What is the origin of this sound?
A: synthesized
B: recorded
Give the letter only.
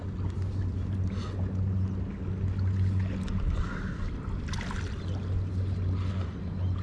B